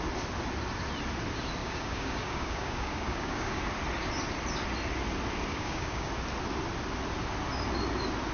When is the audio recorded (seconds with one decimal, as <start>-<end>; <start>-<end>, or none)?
0.0-1.6; 3.6-5.5; 6.1-8.3